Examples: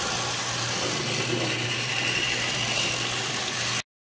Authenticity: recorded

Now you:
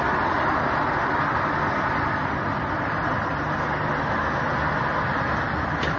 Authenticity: recorded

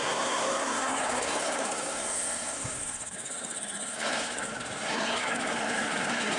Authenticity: remade